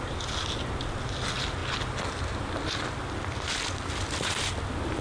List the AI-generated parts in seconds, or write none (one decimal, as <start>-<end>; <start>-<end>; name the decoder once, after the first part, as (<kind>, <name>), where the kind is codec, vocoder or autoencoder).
none